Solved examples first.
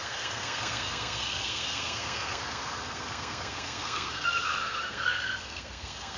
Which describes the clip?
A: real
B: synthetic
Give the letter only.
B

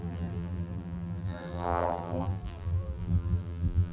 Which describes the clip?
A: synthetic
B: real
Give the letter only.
A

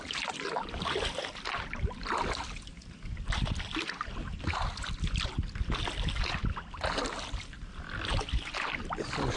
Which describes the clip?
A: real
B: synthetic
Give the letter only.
A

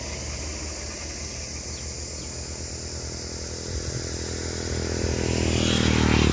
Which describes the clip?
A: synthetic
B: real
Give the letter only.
B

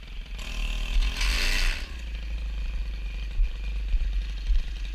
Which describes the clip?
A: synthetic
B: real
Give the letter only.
B